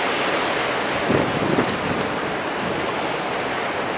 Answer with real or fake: real